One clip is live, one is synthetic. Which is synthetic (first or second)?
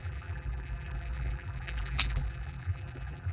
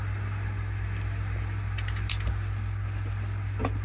first